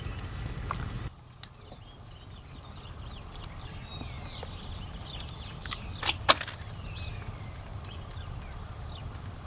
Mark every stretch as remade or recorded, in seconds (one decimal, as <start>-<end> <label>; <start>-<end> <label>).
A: 0.0-9.5 recorded